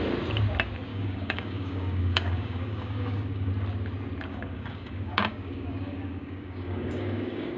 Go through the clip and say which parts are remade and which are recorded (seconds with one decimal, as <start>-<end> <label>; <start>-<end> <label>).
0.0-0.9 recorded; 0.9-3.5 remade; 3.5-4.3 recorded; 4.3-7.6 remade